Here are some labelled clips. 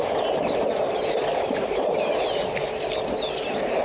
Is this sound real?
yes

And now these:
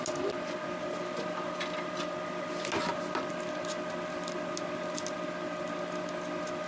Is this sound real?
yes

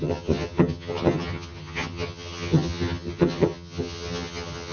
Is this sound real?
no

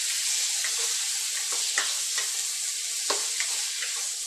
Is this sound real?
yes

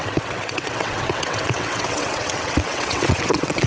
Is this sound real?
no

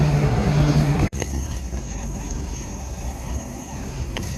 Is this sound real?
no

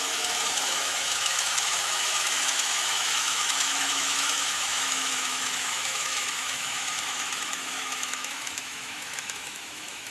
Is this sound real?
no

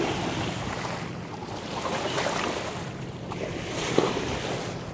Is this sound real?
yes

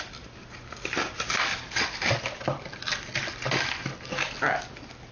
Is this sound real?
yes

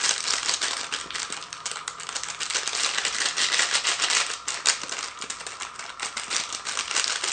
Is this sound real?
yes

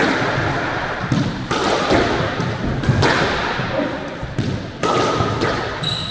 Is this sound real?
yes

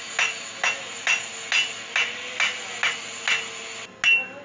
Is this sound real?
yes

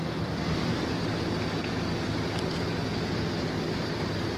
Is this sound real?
yes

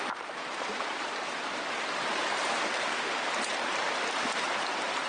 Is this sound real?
no